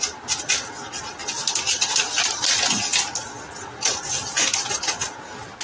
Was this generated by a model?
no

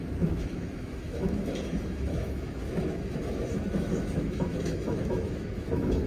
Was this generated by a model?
yes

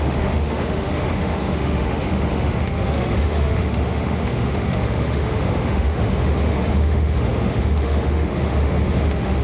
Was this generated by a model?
yes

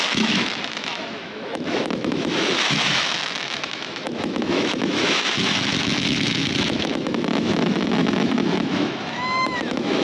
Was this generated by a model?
yes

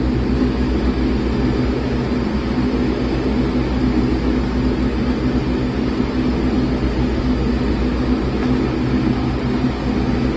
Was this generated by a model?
no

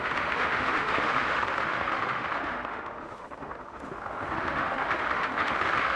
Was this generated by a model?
yes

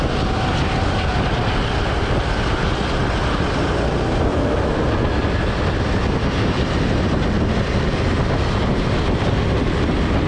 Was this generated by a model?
no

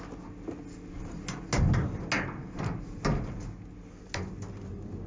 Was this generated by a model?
no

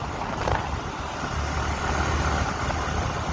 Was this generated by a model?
no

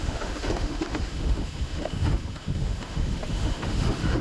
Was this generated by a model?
yes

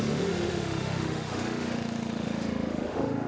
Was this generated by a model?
yes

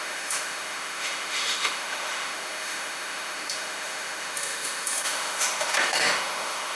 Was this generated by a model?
yes